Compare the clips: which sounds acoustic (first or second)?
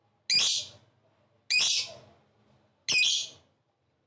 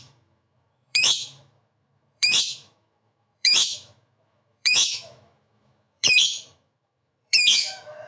first